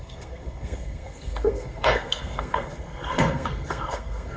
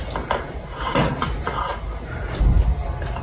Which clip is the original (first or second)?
second